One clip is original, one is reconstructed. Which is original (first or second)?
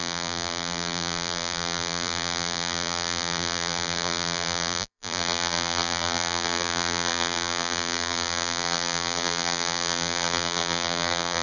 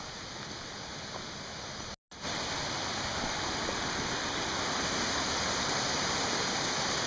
second